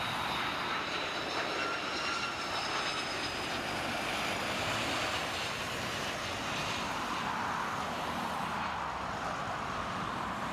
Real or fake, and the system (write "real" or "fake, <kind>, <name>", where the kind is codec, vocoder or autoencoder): real